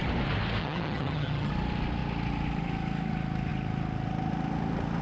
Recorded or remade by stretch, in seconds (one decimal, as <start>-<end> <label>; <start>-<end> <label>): 0.0-0.6 recorded; 0.6-1.5 remade; 1.5-5.0 recorded